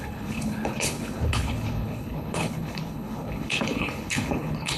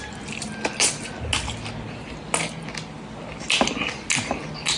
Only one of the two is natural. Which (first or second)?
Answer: second